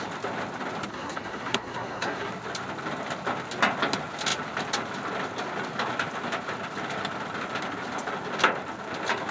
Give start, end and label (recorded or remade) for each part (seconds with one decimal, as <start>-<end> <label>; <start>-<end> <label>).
0.0-0.9 recorded; 0.9-2.3 remade; 2.3-9.3 recorded